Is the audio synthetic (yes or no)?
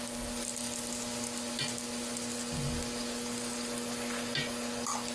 no